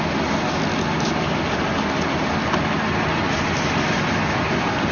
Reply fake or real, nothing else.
real